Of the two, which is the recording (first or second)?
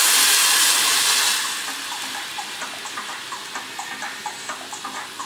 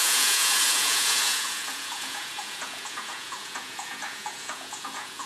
first